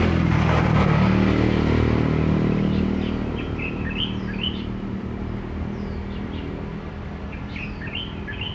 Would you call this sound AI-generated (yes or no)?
no